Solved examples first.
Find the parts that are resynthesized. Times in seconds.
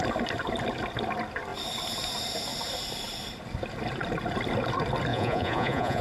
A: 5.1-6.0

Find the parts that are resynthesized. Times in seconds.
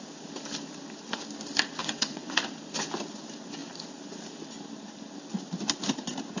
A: 1.8-2.4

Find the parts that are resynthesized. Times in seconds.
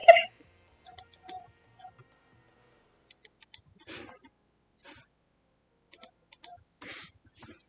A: none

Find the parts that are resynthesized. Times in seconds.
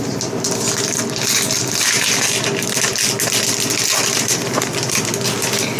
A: none